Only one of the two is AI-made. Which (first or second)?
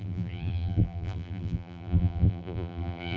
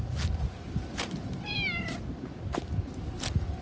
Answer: first